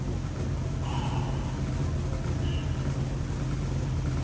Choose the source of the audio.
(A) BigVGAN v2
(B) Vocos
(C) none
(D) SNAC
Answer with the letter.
C